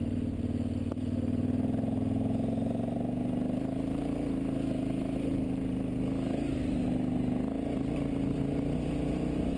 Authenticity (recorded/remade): recorded